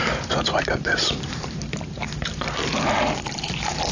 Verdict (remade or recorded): remade